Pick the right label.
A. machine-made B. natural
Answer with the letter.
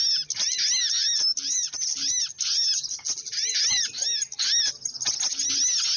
B